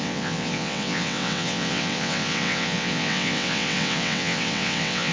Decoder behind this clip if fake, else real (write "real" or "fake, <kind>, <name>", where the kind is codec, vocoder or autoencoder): fake, vocoder, WaveNeXt